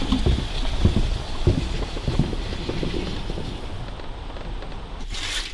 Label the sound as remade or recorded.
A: recorded